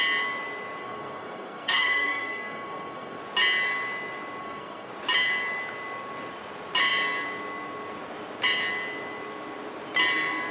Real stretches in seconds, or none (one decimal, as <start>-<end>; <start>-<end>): 0.0-0.8; 3.2-4.4; 4.9-10.5